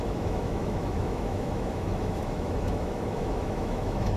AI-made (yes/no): yes